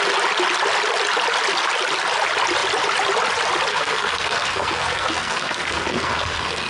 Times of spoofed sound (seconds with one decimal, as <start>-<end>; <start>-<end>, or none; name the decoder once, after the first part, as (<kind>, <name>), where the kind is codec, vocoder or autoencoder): 3.7-6.7 (codec, SNAC)

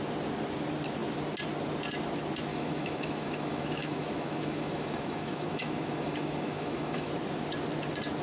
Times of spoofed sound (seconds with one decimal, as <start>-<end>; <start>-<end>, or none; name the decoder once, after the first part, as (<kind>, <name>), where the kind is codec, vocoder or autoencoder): 2.5-7.1 (autoencoder, DAC-VAE)

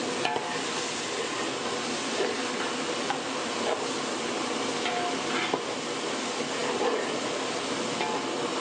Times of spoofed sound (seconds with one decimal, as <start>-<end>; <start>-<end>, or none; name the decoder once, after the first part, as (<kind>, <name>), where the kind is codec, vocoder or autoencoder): none

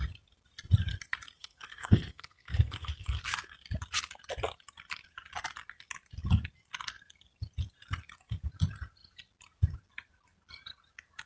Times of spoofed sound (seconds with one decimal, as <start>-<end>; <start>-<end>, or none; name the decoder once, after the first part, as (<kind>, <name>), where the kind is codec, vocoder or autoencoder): 1.4-3.2 (codec, SNAC)

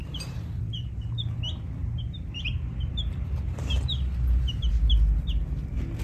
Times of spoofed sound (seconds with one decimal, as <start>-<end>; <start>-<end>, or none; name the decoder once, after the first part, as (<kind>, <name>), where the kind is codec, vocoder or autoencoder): 0.0-1.2 (vocoder, BigVGAN v2); 1.8-4.7

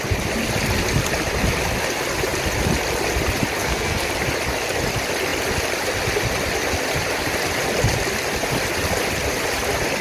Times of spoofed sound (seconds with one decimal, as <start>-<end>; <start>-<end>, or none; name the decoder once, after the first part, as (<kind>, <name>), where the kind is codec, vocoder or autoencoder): 3.6-4.1 (codec, SNAC)